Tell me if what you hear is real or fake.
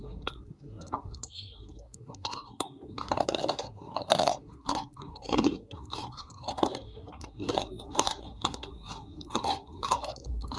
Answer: fake